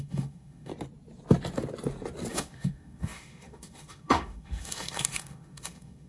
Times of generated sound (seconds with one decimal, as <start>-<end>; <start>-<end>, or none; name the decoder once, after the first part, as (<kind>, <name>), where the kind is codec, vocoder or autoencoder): 0.0-0.7 (autoencoder, DAC-VAE); 2.3-6.1